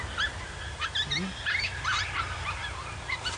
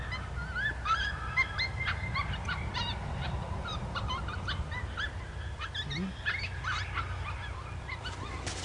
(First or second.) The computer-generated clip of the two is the first